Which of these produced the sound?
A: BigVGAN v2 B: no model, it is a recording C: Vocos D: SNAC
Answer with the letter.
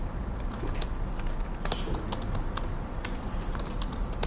B